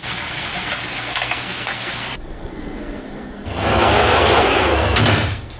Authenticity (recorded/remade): remade